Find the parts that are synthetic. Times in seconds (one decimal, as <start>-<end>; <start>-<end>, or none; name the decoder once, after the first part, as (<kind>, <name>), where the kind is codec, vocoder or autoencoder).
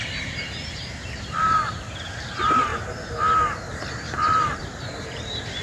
0.0-2.7 (vocoder, BigVGAN v2); 3.7-5.6